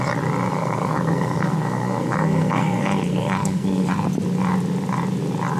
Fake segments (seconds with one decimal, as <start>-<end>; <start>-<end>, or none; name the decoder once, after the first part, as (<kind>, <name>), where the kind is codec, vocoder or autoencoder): 0.5-3.9 (codec, SNAC)